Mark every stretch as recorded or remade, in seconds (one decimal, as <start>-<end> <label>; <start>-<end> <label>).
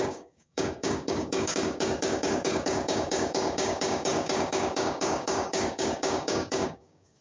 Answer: 0.0-7.2 remade